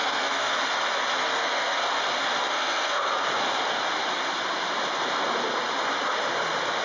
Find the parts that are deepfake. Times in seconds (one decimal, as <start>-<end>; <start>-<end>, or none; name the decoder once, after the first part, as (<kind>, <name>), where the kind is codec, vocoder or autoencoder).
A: 0.0-0.6 (codec, SNAC); 1.2-1.9; 2.5-3.1